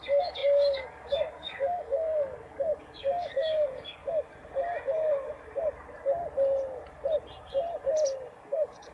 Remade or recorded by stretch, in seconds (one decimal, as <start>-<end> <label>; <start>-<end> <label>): 0.0-4.0 remade; 4.0-8.4 recorded; 8.4-8.9 remade